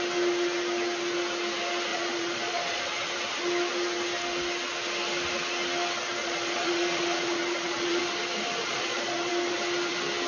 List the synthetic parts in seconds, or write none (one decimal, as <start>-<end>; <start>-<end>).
1.9-2.8; 6.2-8.0; 8.6-9.3